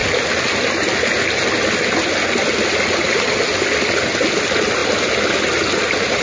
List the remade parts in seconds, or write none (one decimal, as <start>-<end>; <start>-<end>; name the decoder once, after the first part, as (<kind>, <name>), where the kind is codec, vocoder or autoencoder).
none